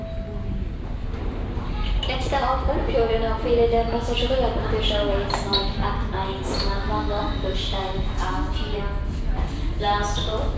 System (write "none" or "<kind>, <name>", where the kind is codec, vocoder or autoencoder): none